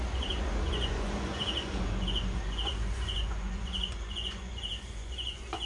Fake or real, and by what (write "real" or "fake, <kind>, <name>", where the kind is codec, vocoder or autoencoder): fake, vocoder, Vocos